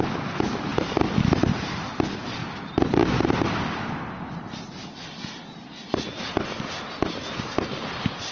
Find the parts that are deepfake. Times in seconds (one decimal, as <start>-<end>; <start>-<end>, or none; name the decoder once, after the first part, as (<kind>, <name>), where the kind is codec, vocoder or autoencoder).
0.0-0.7 (vocoder, BigVGAN v2); 1.5-8.3